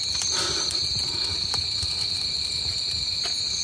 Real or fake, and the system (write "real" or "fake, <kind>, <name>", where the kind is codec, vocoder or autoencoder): real